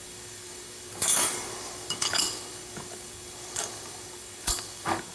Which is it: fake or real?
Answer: fake